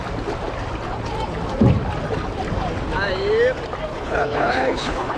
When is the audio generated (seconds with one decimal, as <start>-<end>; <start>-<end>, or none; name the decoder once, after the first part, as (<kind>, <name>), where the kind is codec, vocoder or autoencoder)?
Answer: 3.9-5.2 (codec, HILCodec)